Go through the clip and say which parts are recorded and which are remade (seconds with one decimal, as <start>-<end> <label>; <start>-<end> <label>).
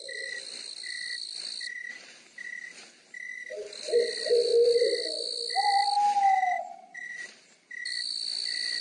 0.0-4.5 remade; 4.5-6.6 recorded; 6.6-8.8 remade